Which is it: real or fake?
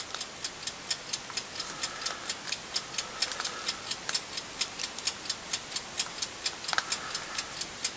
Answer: real